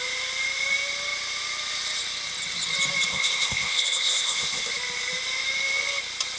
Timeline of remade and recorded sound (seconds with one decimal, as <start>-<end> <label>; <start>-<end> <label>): 0.0-3.1 recorded; 3.1-4.7 remade; 4.7-6.4 recorded